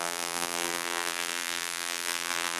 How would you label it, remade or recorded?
remade